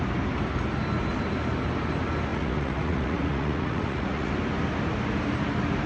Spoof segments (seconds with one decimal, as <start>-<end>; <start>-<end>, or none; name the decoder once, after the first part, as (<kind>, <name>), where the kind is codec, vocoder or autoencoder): 2.3-4.3 (vocoder, Vocos)